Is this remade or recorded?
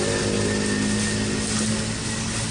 recorded